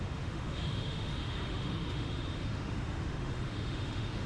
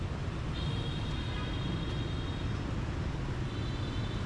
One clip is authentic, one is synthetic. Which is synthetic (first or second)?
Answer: first